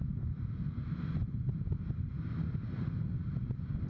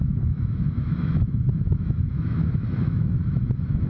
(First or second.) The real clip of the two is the first